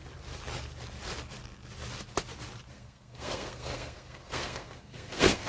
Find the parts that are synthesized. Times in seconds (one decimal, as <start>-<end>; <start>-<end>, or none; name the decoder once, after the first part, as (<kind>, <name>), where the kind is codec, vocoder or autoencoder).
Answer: 2.7-5.5 (codec, SNAC)